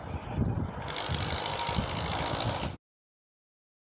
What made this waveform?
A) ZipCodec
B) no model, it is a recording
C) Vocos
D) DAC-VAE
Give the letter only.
B